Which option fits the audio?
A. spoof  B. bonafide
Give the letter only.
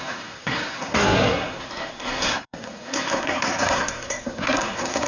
A